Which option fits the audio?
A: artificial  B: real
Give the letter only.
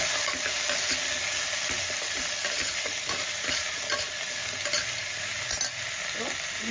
B